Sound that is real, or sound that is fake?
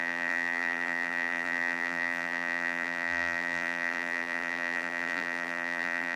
fake